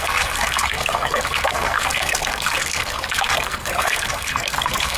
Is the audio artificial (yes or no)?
yes